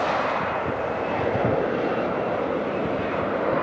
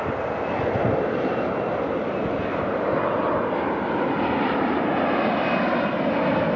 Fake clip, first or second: first